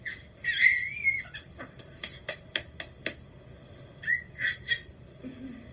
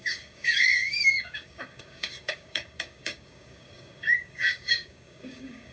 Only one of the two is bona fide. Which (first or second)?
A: first